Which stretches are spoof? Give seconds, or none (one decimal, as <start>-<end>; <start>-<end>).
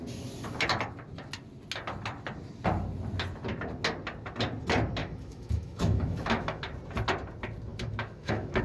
5.0-6.6; 7.7-8.6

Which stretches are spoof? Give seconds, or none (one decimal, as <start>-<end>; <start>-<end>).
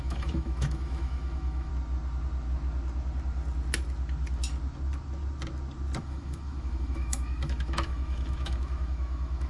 0.0-1.7; 6.0-9.5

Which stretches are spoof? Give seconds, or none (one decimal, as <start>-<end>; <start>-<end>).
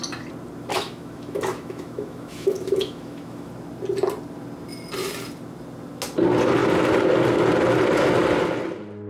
0.7-3.5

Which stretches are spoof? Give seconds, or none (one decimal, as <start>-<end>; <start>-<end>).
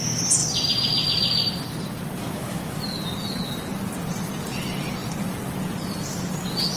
2.2-2.8